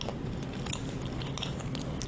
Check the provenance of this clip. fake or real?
real